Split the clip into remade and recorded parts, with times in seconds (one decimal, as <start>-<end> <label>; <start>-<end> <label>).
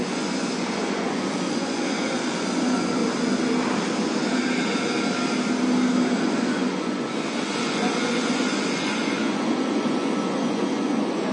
0.0-3.0 remade; 3.0-6.2 recorded; 6.2-11.3 remade